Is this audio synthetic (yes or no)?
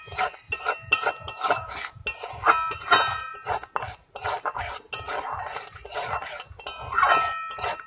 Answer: no